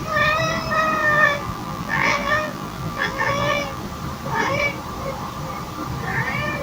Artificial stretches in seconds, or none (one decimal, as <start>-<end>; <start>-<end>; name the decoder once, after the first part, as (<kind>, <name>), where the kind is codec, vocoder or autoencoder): 1.0-3.8 (vocoder, BigVGAN v2)